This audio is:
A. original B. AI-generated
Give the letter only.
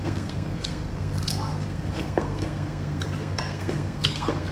B